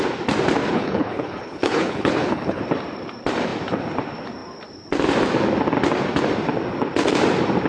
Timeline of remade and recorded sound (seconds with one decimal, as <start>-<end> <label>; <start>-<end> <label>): 0.0-0.6 recorded; 0.6-2.6 remade; 2.6-7.7 recorded